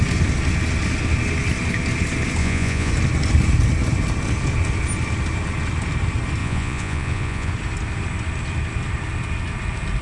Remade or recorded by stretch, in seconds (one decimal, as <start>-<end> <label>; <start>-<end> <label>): 0.0-2.4 recorded; 2.4-2.9 remade; 2.9-6.4 recorded; 6.4-7.5 remade; 7.5-10.0 recorded